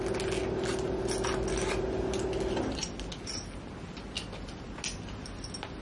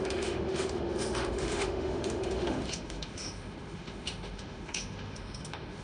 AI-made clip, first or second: second